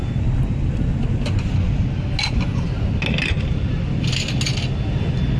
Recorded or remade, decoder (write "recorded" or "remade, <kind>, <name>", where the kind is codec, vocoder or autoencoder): recorded